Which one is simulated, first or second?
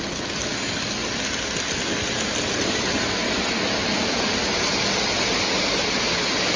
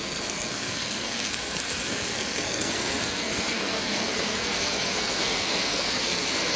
second